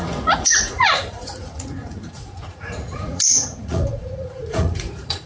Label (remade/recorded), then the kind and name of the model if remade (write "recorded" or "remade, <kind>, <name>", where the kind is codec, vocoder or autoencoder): remade, vocoder, Vocos